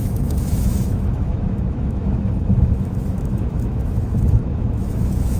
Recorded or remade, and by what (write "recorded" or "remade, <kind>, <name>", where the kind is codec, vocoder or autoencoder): remade, autoencoder, DAC-VAE